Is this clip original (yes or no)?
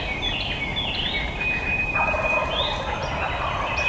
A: yes